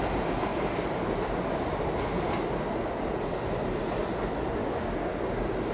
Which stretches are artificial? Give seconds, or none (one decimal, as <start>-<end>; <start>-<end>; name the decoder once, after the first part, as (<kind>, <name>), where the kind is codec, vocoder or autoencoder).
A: 4.6-5.3 (codec, DAC)